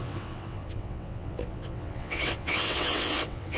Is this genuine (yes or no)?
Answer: no